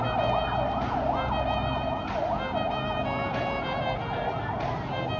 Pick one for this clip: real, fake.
real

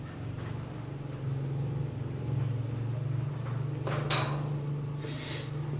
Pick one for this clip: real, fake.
real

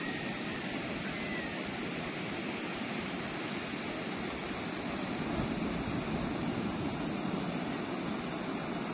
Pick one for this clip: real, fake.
real